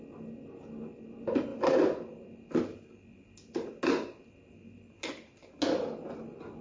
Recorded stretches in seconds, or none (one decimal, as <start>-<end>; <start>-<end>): 0.0-6.6